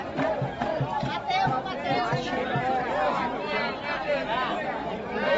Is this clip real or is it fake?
fake